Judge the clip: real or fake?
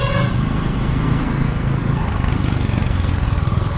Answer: fake